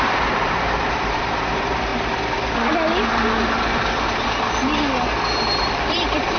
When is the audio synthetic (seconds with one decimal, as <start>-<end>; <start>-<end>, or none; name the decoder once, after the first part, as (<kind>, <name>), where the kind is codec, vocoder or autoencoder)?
0.0-1.9 (vocoder, BigVGAN v2); 5.6-6.4